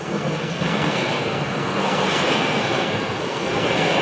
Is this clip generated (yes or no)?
yes